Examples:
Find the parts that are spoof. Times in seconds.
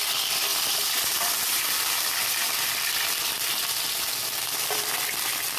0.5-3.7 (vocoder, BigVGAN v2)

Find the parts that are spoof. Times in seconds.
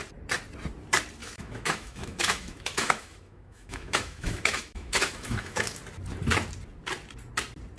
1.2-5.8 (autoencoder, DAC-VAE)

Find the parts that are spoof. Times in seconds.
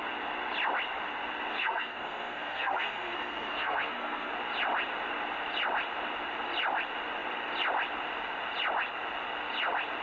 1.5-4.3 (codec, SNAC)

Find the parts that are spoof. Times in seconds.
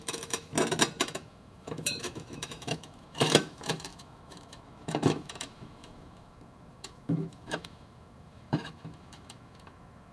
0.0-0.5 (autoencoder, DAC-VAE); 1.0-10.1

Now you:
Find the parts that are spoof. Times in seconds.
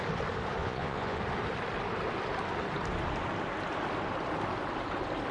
0.6-1.2 (vocoder, Vocos)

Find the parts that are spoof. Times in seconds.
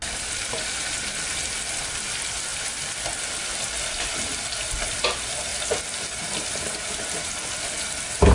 none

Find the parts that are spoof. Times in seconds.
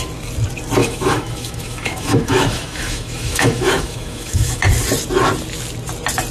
0.8-4.6 (autoencoder, DAC-VAE)